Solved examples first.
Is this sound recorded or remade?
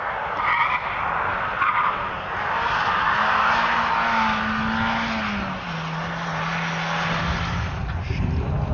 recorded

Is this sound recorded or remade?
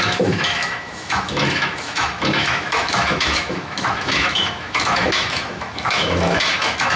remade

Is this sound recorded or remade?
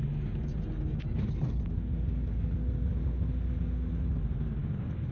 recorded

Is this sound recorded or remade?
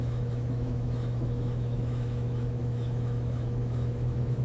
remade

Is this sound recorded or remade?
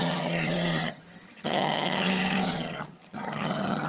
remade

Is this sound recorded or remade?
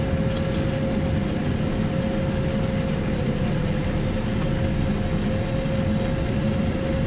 recorded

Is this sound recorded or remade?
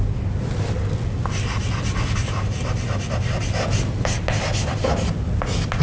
recorded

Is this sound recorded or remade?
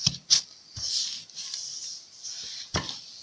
remade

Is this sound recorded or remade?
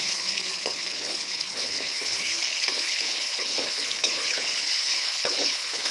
remade